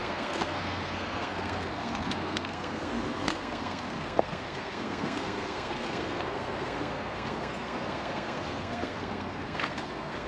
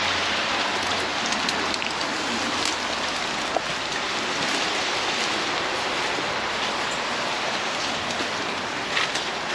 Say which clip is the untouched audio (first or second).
second